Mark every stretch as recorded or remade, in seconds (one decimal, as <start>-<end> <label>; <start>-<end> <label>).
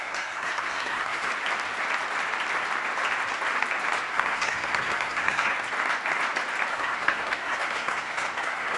0.0-1.3 remade; 1.3-4.1 recorded; 4.1-5.5 remade; 5.5-6.7 recorded; 6.7-8.8 remade